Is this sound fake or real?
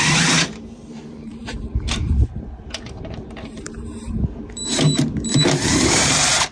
fake